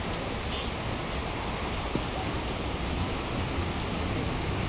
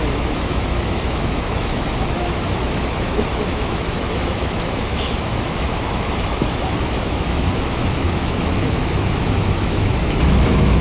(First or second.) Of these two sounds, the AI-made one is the second